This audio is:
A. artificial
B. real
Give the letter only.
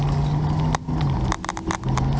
B